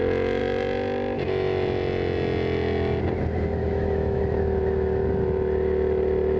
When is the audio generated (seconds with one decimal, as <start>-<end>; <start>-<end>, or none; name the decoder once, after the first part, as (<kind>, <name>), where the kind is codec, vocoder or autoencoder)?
3.6-4.2 (autoencoder, DAC-VAE)

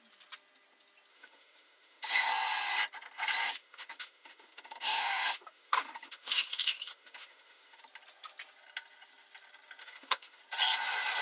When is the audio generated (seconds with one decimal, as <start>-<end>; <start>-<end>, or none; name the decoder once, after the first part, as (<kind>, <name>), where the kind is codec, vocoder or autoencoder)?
1.1-2.3 (autoencoder, DAC-VAE); 3.6-7.8; 9.8-10.4

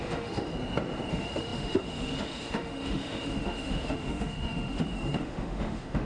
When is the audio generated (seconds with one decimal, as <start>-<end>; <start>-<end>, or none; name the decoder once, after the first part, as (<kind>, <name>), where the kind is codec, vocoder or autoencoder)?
0.0-0.5 (autoencoder, DAC-VAE); 1.1-6.1

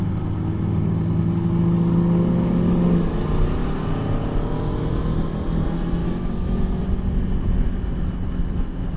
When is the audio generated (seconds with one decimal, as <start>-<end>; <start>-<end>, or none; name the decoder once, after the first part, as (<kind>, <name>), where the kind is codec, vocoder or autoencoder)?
6.0-6.8 (autoencoder, DAC-VAE)

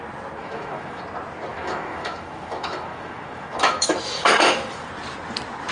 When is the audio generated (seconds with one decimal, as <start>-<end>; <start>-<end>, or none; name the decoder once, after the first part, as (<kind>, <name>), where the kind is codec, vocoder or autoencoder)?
0.4-1.0 (autoencoder, DAC-VAE); 1.5-4.9

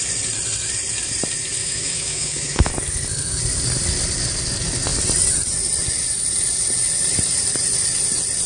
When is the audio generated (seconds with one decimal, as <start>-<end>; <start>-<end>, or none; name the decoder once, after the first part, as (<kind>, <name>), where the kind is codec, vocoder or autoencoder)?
1.6-2.7 (autoencoder, DAC-VAE)

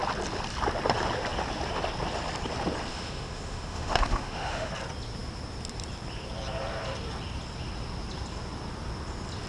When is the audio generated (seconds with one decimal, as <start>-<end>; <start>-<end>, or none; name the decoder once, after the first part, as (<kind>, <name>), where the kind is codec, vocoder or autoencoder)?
2.9-4.7 (autoencoder, DAC-VAE)

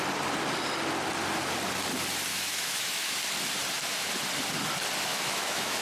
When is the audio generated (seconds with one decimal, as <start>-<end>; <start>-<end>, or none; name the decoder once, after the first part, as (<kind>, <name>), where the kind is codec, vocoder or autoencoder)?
2.3-3.2 (autoencoder, DAC-VAE); 5.1-5.8